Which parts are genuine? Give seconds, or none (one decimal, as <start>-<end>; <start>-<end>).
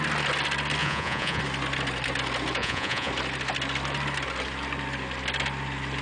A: 0.0-0.8; 1.4-2.6; 3.1-6.0